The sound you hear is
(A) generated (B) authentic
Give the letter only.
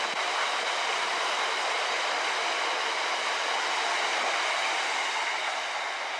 B